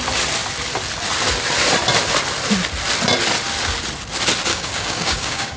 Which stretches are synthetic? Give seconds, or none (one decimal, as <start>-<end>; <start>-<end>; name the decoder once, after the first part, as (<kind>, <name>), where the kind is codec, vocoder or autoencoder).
4.5-5.6 (codec, DAC)